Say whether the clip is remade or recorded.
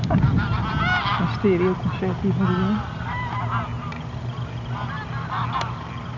recorded